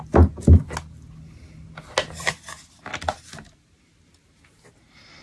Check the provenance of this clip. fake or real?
real